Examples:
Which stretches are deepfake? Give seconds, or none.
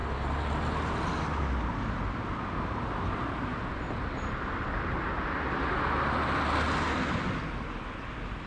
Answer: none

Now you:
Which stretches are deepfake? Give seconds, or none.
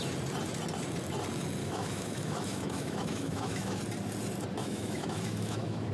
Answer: 1.6-3.8 (autoencoder, DAC-VAE); 4.6-5.9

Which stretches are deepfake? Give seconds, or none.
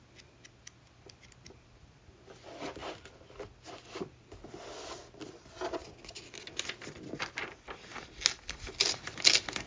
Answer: none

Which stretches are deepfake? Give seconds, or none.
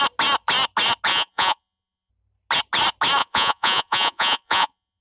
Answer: 1.1-2.1 (vocoder, Vocos); 3.2-5.0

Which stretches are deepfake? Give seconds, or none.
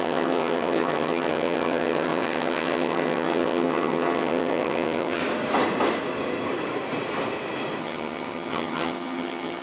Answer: 0.0-5.2 (vocoder, HiFi-GAN); 7.8-9.6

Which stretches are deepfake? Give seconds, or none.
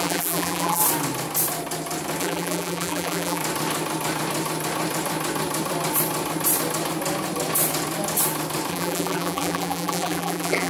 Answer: 0.0-0.8 (vocoder, BigVGAN v2); 2.2-3.4; 8.7-10.7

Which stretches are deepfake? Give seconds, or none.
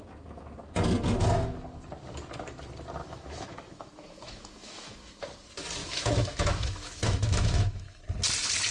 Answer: 3.0-5.2 (autoencoder, DAC-VAE); 5.8-8.0